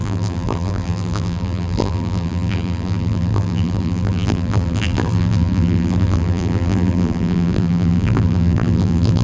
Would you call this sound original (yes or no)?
no